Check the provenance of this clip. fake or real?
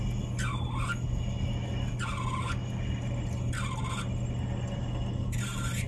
real